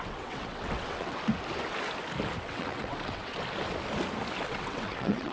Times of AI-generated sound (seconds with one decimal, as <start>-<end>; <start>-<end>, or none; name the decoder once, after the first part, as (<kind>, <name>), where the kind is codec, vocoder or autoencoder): 0.0-1.2 (vocoder, WaveNeXt); 2.4-3.3; 4.5-5.3